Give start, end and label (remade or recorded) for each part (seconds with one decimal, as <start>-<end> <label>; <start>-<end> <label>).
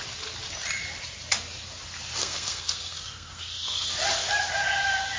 0.0-2.2 recorded; 2.2-3.9 remade; 3.9-5.2 recorded